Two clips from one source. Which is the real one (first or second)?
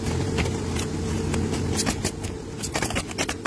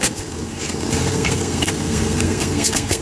first